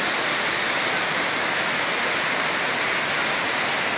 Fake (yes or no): no